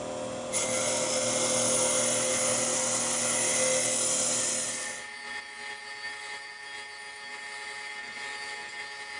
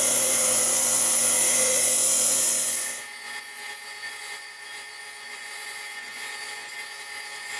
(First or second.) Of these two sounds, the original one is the first